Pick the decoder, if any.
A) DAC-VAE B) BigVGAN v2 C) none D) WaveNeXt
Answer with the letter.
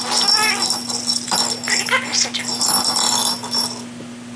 C